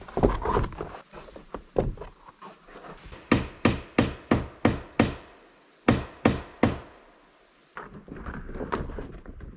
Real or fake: real